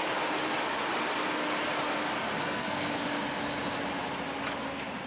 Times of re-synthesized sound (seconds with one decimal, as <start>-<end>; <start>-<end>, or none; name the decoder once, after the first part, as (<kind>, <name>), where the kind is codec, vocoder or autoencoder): 2.4-3.0 (codec, SNAC)